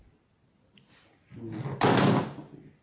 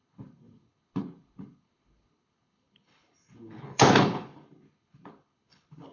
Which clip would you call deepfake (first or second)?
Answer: second